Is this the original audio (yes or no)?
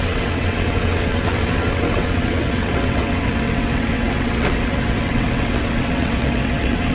no